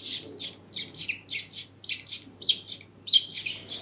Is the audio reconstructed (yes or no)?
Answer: no